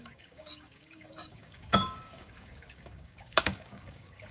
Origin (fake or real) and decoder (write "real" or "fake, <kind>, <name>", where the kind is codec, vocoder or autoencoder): fake, codec, DAC